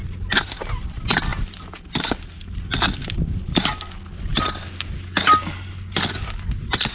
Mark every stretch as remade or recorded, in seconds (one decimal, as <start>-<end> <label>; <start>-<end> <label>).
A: 0.0-6.9 recorded